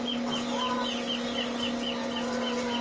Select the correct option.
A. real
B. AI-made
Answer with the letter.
A